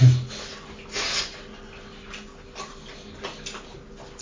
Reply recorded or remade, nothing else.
recorded